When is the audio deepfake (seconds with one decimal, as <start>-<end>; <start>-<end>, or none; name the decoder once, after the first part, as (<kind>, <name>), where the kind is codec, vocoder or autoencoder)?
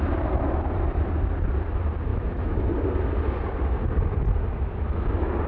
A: 2.1-2.6 (autoencoder, DAC-VAE)